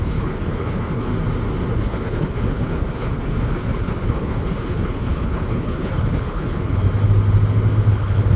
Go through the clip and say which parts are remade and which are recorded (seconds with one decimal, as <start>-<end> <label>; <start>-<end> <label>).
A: 0.0-1.1 remade; 1.1-1.7 recorded; 1.7-6.8 remade; 6.8-7.9 recorded; 7.9-8.4 remade